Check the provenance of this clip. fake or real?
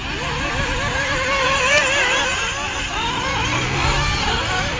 real